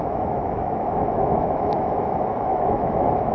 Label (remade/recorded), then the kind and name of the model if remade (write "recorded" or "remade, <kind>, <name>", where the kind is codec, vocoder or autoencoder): remade, autoencoder, DAC-VAE